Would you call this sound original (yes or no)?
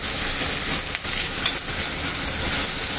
yes